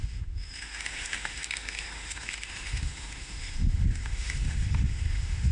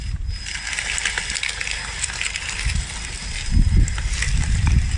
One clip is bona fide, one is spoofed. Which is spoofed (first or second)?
first